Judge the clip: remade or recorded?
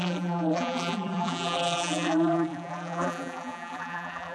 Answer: remade